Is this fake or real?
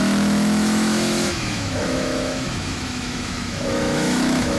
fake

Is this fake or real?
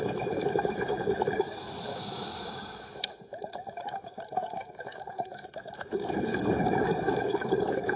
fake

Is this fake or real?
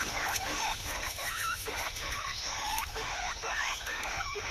fake